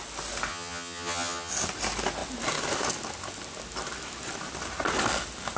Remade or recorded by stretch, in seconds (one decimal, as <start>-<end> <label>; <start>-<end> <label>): 0.0-0.5 recorded; 0.5-1.5 remade; 1.5-5.6 recorded